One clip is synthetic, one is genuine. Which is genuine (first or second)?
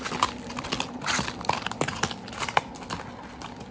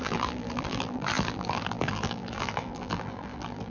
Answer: first